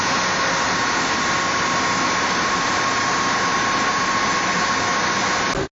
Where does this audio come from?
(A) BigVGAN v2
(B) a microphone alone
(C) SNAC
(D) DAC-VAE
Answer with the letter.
B